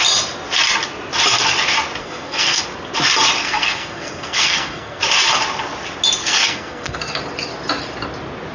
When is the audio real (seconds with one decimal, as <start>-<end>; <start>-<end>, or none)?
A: 0.0-2.0; 2.6-3.4; 5.0-6.2; 7.2-8.5